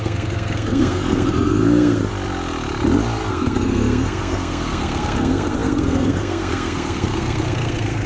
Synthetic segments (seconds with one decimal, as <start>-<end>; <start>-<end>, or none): 0.0-2.0; 3.3-8.1